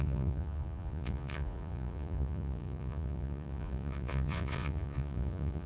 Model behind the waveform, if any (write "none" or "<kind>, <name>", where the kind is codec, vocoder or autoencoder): vocoder, Vocos